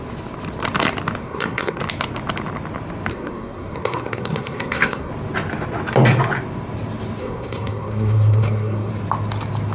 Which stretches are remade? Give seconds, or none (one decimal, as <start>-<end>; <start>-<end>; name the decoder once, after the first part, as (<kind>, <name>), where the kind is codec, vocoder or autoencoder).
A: 1.2-1.8 (codec, SNAC); 3.1-5.1; 7.2-8.9